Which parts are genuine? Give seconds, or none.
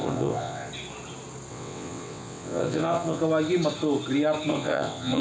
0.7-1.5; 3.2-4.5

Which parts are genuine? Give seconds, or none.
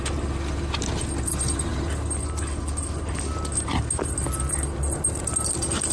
0.0-5.9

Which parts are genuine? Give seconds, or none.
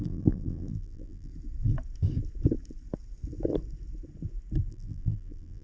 1.3-4.7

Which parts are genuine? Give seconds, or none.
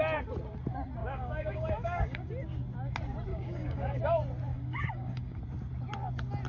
0.0-1.0; 2.3-3.3; 4.0-4.5; 5.4-6.5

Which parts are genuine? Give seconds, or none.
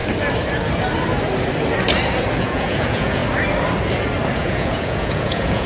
0.0-2.4; 3.2-4.4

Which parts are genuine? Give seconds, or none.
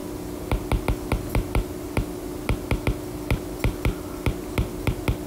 0.0-5.3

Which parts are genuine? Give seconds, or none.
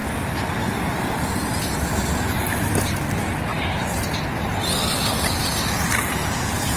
0.0-3.5